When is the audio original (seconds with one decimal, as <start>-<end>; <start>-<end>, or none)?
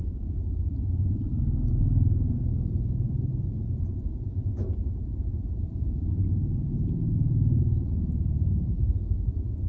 8.9-9.7